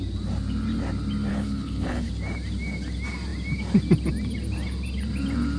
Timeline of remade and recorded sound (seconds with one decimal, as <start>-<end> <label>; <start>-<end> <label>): 0.0-1.3 recorded; 1.3-2.1 remade; 2.1-5.6 recorded